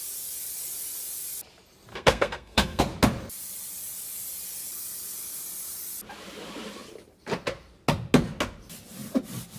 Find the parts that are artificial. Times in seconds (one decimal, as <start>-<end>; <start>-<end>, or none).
1.9-2.8